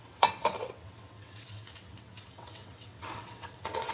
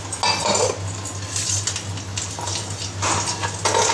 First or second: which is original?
second